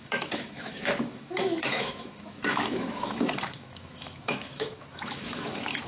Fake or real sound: fake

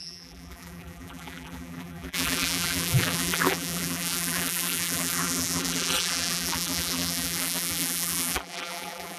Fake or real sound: fake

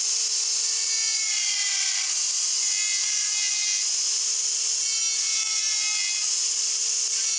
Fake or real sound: real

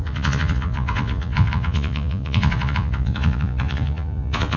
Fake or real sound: fake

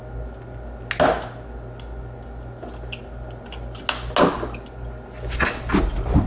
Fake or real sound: real